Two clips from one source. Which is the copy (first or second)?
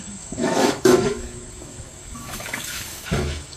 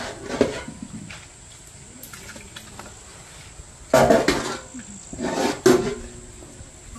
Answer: first